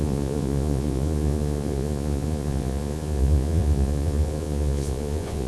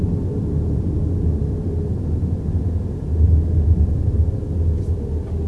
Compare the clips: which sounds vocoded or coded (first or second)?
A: first